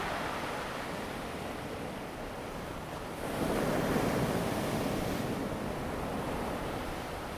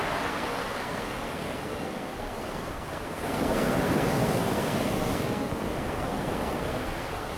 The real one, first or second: first